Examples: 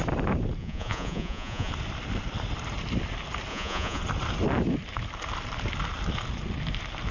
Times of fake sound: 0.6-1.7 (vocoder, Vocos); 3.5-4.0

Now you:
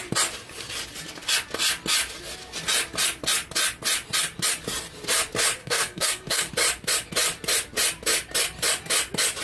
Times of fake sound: 5.6-6.5 (codec, SNAC)

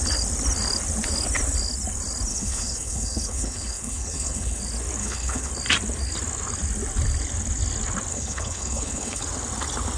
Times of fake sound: 2.3-4.6 (codec, HILCodec); 5.0-5.5; 8.1-9.2